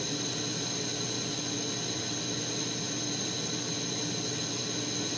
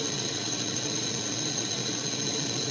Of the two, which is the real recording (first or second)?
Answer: first